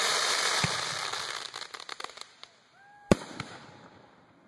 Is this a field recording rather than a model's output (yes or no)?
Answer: no